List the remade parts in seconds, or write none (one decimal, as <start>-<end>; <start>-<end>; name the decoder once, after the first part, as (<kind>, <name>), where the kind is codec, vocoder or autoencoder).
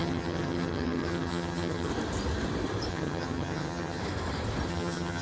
0.0-1.9 (vocoder, HiFi-GAN); 2.9-4.0; 4.7-5.2